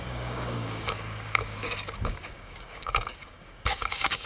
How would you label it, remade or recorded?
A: remade